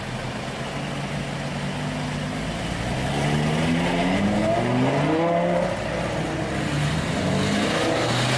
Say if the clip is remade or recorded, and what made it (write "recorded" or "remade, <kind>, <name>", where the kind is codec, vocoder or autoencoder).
recorded